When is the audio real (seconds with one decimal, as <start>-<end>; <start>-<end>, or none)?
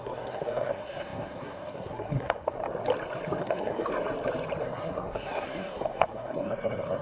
2.6-3.4; 3.9-4.6